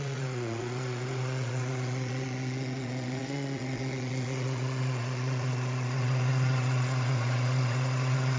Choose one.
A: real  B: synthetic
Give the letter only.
B